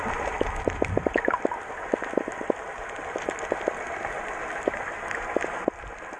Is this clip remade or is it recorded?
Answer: remade